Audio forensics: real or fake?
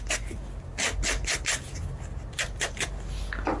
real